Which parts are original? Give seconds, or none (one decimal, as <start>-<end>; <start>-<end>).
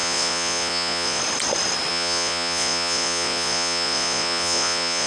1.2-1.9